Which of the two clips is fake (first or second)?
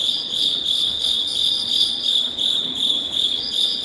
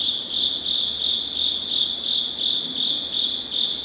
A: first